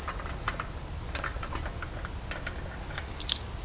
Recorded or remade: recorded